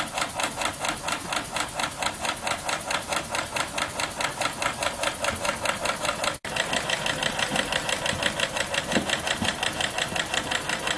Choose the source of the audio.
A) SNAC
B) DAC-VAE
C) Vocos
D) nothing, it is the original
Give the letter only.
D